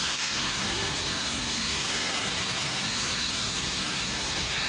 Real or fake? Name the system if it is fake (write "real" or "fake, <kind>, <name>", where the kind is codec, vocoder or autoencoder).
fake, codec, SNAC